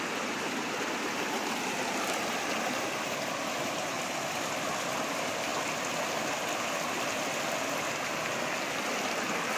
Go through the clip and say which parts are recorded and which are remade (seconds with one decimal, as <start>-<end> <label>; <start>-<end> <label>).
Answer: 0.0-9.6 recorded